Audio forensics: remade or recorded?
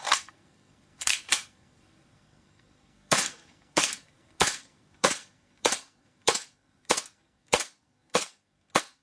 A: remade